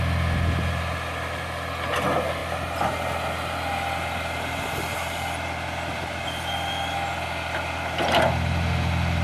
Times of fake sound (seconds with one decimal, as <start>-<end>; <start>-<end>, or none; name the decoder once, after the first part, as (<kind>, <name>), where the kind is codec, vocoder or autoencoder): none